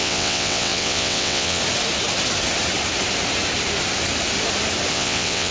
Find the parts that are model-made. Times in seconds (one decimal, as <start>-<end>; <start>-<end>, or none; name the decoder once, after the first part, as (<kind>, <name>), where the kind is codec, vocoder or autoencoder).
0.0-1.6 (vocoder, WaveNeXt); 4.9-5.5

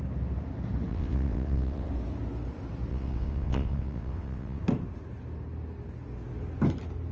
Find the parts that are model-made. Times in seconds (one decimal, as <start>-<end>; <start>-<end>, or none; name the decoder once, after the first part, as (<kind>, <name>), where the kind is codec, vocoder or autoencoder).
0.9-1.9 (vocoder, WaveNeXt); 2.9-4.6

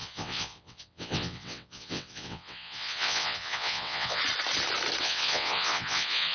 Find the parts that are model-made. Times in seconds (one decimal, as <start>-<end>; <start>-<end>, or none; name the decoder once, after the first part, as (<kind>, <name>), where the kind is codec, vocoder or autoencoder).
0.0-4.2 (vocoder, WaveNeXt); 5.0-6.3